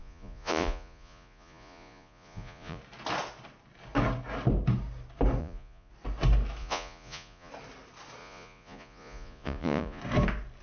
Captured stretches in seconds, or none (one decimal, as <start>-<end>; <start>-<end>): 2.8-5.4; 5.9-6.6; 7.5-8.2; 10.0-10.6